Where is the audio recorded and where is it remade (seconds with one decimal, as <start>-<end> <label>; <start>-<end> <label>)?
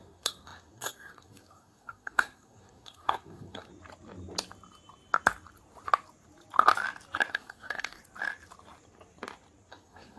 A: 0.0-3.7 remade; 3.7-7.3 recorded; 7.3-8.0 remade; 8.0-9.7 recorded; 9.7-10.2 remade